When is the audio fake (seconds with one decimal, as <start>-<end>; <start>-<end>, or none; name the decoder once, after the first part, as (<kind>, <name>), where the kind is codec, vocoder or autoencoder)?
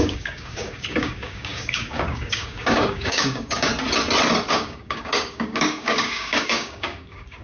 0.0-3.7 (codec, DAC); 4.5-7.4